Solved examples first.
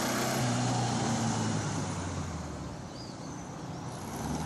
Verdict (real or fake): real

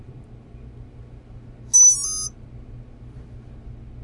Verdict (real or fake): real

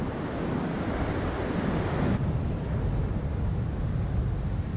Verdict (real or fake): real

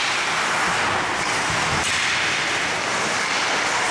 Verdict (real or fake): real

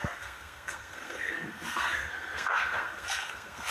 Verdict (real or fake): fake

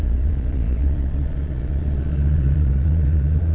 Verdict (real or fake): fake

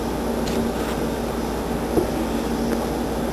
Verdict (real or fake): real